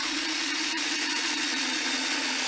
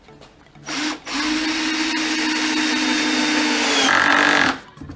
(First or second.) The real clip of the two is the second